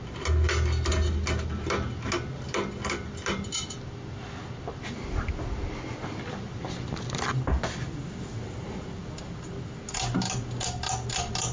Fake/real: real